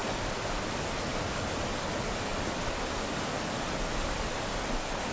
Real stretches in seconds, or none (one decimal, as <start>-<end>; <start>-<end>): 0.0-5.1